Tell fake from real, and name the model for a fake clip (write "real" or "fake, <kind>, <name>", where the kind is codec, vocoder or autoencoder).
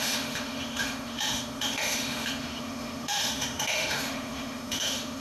fake, autoencoder, DAC-VAE